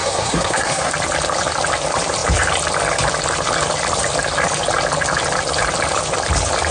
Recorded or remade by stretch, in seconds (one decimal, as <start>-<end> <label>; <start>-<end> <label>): 0.0-0.9 remade; 0.9-6.7 recorded